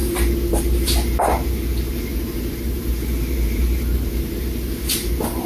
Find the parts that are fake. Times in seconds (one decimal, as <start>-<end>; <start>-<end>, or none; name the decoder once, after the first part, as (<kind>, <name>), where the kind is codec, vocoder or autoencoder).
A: 0.0-5.5 (vocoder, BigVGAN v2)